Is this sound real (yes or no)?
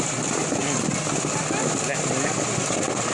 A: yes